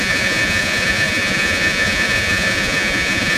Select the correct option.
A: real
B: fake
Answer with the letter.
B